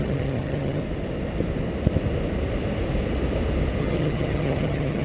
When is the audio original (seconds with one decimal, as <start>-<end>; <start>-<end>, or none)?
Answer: 0.8-3.8